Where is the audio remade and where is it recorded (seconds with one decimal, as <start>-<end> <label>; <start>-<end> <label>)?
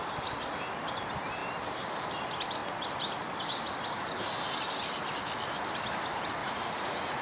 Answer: 0.0-6.4 recorded; 6.4-7.2 remade